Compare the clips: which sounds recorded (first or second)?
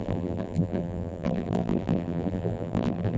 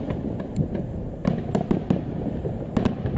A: second